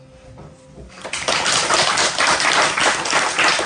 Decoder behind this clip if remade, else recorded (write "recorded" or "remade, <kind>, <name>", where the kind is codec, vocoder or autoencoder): recorded